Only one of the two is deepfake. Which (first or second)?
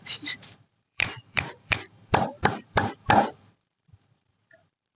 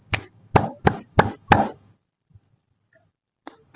first